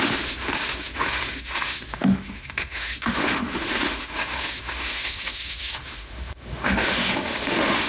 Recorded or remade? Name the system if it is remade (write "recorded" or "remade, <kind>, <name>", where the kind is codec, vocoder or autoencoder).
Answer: remade, autoencoder, DAC-VAE